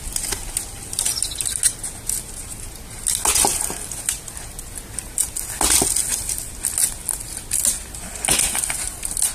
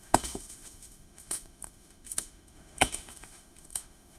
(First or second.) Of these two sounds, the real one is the first